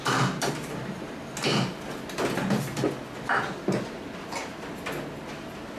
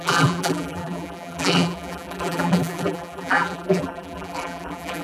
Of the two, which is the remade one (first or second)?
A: second